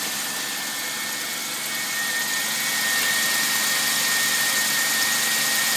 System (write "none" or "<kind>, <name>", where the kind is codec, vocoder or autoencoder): none